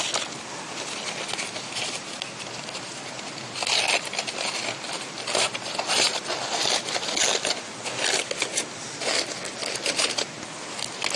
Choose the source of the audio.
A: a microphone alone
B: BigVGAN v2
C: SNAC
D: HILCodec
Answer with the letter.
A